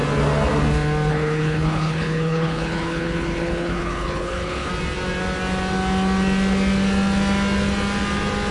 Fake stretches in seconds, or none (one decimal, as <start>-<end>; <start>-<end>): 1.1-4.7